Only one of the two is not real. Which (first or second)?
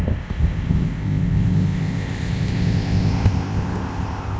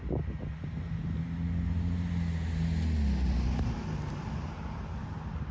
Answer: first